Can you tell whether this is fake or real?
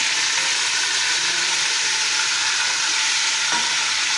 real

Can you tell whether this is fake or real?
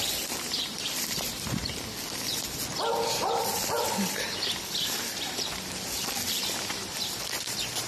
fake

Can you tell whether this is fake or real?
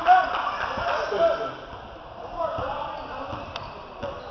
real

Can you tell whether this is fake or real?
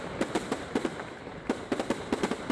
fake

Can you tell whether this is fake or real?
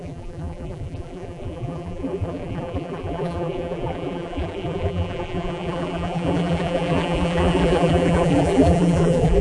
fake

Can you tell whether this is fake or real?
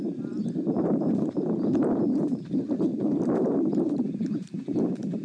fake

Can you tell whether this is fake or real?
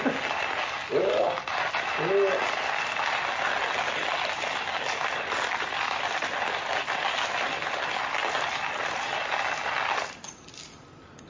real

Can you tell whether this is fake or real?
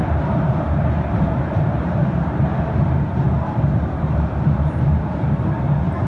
fake